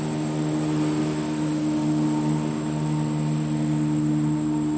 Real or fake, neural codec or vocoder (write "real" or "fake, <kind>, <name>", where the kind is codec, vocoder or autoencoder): real